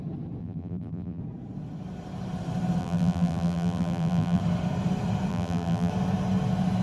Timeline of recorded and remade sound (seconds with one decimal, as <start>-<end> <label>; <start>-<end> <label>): 0.0-0.4 recorded; 0.4-1.2 remade; 1.2-2.8 recorded; 2.8-4.4 remade; 4.4-5.3 recorded; 5.3-5.9 remade; 5.9-6.8 recorded